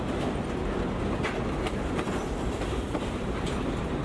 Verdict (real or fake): real